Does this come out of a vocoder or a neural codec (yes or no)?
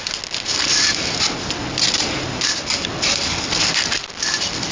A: no